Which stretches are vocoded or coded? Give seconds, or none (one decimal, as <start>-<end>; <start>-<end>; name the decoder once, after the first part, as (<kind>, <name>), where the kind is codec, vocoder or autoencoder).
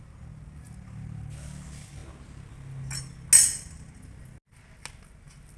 none